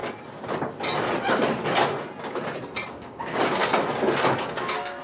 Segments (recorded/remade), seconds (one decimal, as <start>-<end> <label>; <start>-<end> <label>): 0.0-2.9 recorded; 2.9-3.6 remade; 3.6-4.4 recorded; 4.4-5.0 remade

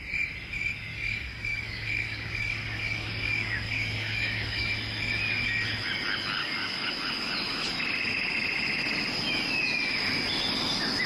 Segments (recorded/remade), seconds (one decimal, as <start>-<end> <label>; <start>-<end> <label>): 0.0-0.9 recorded; 0.9-4.7 remade; 4.7-6.4 recorded; 6.4-6.9 remade; 6.9-11.1 recorded

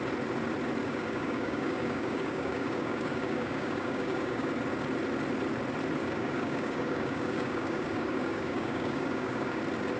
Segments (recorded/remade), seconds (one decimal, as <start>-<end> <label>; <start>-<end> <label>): 0.0-0.8 recorded; 0.8-4.5 remade; 4.5-6.0 recorded; 6.0-9.6 remade; 9.6-10.0 recorded

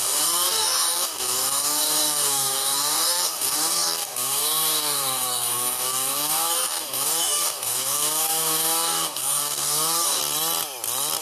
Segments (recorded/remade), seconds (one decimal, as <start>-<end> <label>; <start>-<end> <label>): 0.0-10.2 remade; 10.2-11.2 recorded